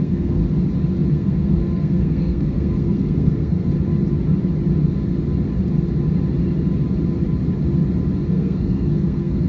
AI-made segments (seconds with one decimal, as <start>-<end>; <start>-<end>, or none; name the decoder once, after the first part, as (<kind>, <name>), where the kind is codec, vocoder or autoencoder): 0.0-0.4 (codec, SNAC); 1.1-3.7; 8.3-9.5